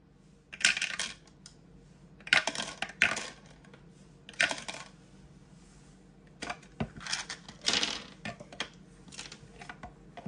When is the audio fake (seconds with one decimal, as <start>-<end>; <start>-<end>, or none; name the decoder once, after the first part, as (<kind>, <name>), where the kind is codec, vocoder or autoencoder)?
none